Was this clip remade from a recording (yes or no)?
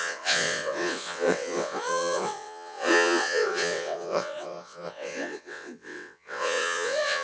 yes